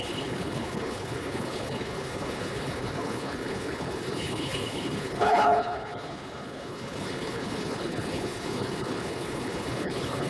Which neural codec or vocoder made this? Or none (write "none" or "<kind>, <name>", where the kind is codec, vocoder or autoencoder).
codec, HILCodec